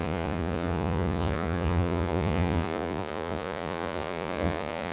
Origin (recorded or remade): remade